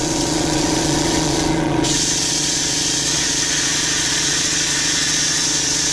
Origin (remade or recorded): remade